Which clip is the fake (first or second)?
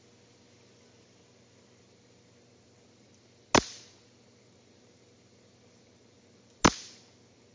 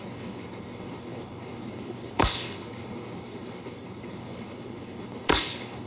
second